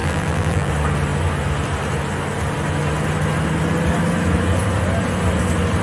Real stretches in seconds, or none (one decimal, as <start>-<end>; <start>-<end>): 0.7-5.8